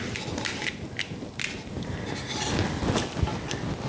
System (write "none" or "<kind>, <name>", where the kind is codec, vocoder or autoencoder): none